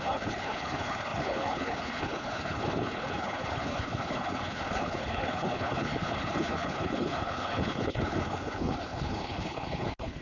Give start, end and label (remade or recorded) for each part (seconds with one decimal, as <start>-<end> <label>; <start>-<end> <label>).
0.0-10.2 remade